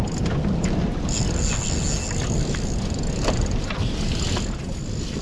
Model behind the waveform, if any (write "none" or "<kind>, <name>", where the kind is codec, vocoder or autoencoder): none